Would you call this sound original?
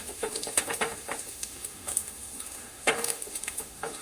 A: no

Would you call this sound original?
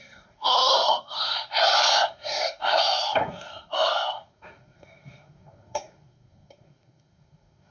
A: no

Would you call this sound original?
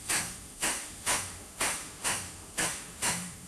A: no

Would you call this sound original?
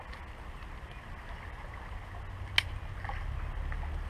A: yes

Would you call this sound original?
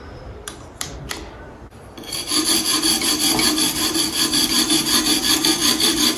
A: no